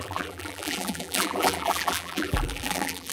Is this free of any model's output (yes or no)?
no